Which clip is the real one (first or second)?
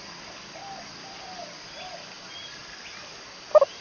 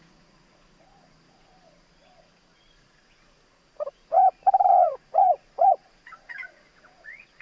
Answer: first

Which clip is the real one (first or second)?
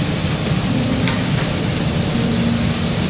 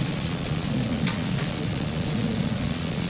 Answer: first